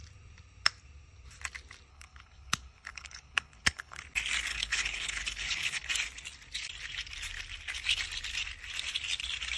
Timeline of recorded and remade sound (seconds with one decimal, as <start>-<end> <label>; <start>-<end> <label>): 0.0-1.9 recorded; 1.9-4.0 remade; 4.0-4.5 recorded; 4.5-5.9 remade; 5.9-9.6 recorded